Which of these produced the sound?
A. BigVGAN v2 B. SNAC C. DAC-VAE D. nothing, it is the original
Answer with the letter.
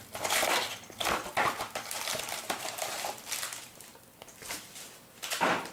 A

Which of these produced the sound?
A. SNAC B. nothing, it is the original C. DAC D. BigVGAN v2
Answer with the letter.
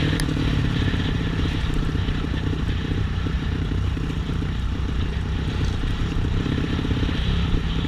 D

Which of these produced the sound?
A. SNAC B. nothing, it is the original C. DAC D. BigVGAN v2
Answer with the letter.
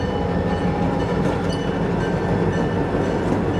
B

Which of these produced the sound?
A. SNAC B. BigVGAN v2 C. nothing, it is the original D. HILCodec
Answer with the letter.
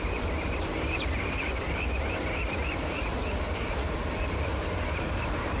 B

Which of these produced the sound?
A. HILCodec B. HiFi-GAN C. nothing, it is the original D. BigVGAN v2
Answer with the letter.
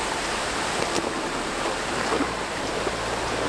D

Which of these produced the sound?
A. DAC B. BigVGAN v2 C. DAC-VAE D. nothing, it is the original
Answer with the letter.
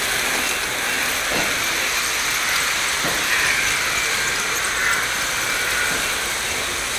D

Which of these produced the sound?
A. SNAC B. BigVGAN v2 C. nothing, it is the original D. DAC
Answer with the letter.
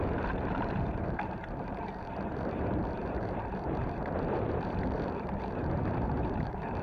B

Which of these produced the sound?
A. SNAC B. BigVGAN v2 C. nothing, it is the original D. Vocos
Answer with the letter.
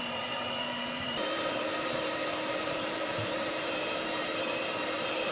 B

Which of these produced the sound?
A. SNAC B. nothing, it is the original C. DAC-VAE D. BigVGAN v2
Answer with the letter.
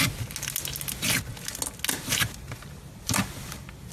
B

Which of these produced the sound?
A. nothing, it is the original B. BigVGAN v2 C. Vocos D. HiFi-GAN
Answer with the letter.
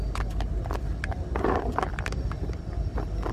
A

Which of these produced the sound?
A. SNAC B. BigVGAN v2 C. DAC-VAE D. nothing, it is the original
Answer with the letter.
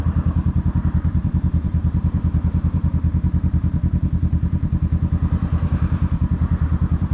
B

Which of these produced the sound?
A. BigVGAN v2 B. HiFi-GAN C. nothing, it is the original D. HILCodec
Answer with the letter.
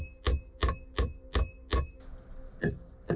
C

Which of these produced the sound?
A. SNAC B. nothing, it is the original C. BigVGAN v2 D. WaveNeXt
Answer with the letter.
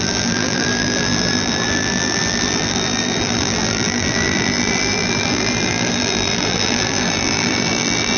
C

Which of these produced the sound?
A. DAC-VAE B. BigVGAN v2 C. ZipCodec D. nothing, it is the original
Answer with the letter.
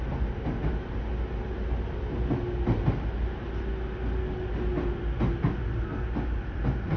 D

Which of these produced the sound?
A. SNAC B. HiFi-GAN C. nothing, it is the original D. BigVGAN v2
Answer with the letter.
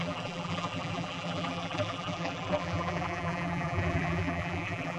D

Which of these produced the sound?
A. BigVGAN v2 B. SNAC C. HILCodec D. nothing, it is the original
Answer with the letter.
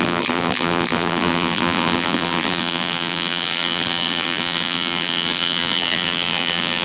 A